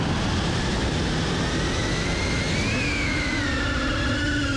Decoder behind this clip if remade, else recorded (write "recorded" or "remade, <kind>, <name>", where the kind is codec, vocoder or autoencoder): recorded